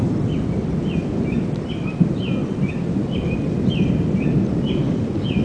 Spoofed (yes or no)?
no